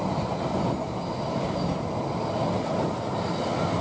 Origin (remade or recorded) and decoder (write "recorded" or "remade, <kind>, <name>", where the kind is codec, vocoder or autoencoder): recorded